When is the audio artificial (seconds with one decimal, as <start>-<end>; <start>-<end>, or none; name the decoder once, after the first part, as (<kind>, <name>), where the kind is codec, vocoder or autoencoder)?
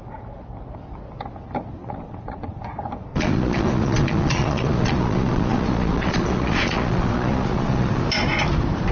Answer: 1.8-2.6 (vocoder, Vocos); 3.1-8.0